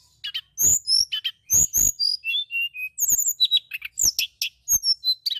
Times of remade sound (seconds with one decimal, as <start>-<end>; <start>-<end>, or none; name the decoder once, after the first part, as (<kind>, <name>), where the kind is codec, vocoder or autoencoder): none